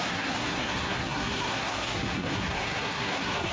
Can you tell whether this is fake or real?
fake